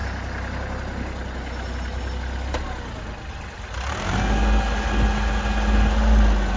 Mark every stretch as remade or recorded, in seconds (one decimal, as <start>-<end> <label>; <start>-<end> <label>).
0.0-6.6 recorded